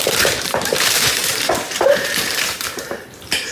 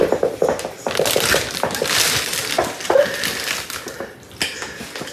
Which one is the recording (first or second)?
second